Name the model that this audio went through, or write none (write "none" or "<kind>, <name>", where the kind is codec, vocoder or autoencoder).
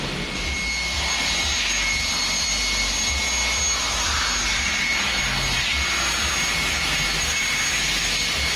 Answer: none